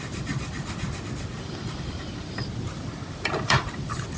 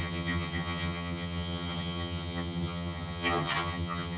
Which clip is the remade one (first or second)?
second